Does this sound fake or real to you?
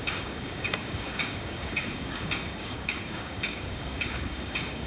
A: fake